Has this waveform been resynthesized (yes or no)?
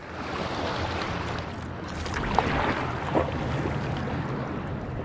no